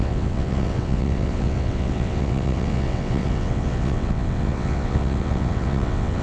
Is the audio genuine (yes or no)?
no